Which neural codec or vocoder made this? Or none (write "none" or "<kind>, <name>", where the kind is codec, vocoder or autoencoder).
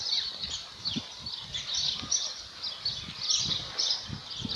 none